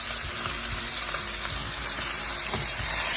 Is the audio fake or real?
real